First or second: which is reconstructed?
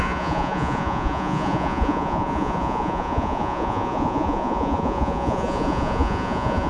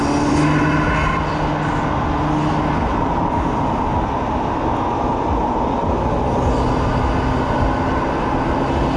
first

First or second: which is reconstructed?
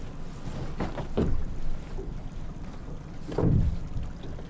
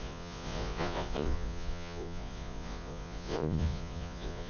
second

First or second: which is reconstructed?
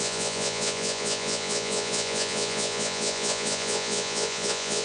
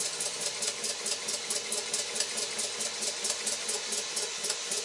first